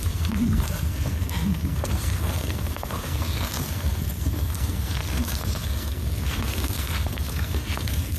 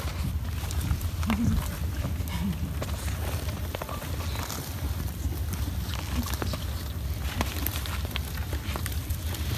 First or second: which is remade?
first